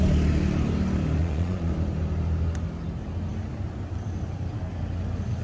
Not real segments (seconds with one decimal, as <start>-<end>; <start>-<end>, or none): 1.2-1.7